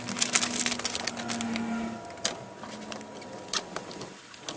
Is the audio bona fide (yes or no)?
yes